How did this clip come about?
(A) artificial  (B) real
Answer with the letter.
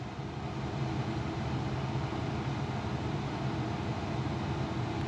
B